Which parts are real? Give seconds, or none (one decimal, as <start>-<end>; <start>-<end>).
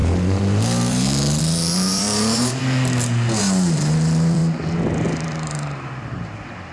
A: 2.6-3.4; 4.4-5.0